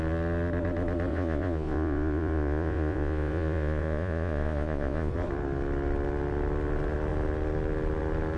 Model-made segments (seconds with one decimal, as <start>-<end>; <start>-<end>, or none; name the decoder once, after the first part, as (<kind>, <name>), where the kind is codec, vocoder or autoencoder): 1.1-5.1 (vocoder, Vocos)